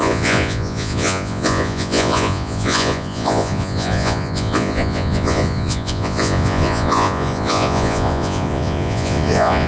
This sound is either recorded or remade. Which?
remade